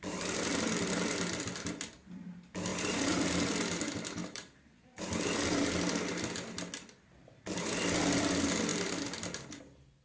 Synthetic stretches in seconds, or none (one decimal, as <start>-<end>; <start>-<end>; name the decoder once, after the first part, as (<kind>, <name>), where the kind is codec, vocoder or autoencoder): 2.7-3.8 (vocoder, BigVGAN v2); 4.2-5.1